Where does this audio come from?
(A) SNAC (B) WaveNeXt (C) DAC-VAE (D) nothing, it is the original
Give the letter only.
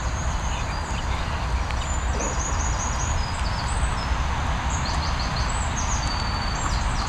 D